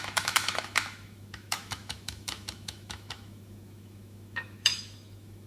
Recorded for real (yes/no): no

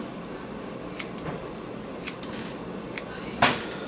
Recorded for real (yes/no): yes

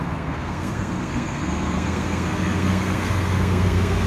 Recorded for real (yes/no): no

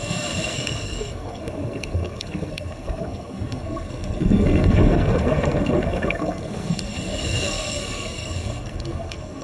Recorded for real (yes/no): no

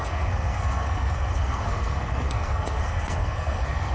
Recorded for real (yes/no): no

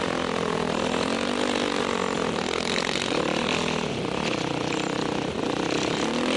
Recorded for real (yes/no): yes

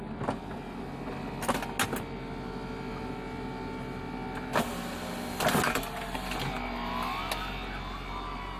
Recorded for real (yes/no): yes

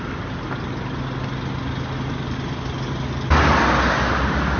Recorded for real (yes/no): yes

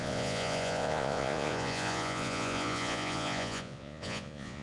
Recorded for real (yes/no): no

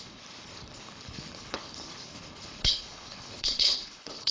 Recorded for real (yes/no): no